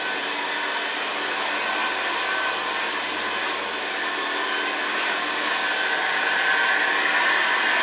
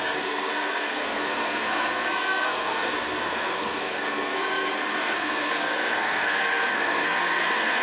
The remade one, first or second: second